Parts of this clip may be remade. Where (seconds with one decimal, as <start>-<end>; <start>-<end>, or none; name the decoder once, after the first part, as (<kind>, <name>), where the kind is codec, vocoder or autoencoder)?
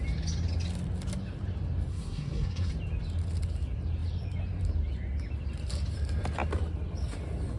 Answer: 1.9-2.7 (codec, SNAC)